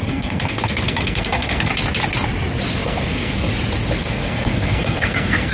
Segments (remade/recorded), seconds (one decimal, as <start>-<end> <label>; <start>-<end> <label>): 0.0-1.7 remade; 1.7-2.7 recorded; 2.7-3.5 remade; 3.5-4.0 recorded; 4.0-5.5 remade